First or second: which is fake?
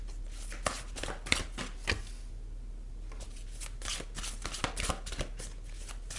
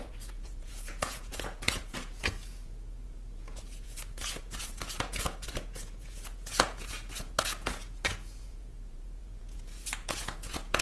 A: second